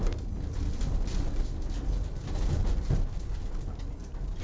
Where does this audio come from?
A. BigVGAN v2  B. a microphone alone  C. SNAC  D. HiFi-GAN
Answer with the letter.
B